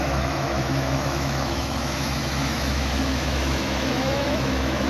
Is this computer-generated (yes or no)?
yes